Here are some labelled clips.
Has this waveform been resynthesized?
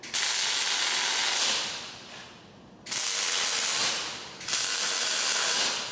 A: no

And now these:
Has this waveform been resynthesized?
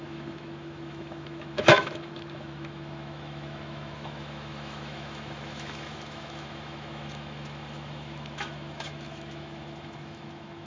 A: yes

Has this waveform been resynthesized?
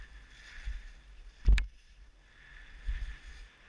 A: no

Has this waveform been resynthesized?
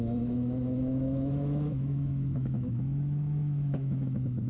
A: yes